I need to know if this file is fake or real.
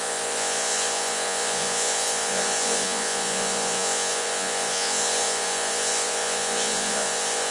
fake